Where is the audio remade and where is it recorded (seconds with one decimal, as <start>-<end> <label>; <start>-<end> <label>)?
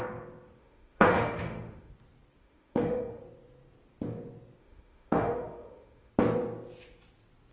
0.0-0.6 recorded; 0.6-1.9 remade; 1.9-2.4 recorded; 2.4-3.2 remade; 3.2-4.6 recorded; 4.6-6.1 remade; 6.1-7.5 recorded